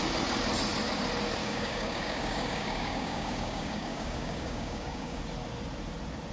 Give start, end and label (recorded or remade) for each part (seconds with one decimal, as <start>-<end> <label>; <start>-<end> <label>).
0.0-1.4 recorded; 1.4-5.2 remade; 5.2-6.3 recorded